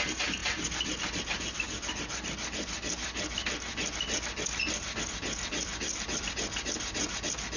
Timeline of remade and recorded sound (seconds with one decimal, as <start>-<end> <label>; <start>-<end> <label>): 0.0-7.6 recorded